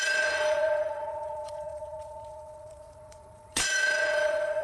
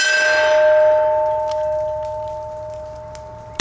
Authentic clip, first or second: second